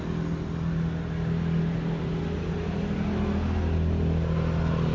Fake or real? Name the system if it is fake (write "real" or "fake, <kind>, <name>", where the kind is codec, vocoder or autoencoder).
real